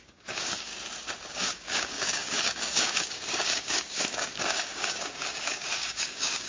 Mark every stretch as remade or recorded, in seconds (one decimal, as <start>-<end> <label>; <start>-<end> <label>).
0.0-0.7 remade; 0.7-1.3 recorded; 1.3-6.5 remade